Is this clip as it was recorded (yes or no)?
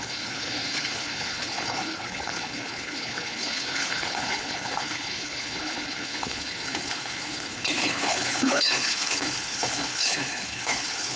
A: no